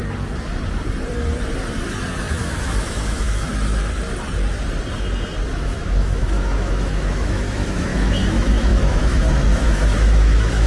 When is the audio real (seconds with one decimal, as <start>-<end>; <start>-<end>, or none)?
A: 0.0-2.4; 3.5-5.5